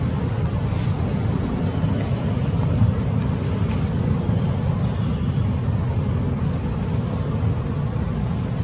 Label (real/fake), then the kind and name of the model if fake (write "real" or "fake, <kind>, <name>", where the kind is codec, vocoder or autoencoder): real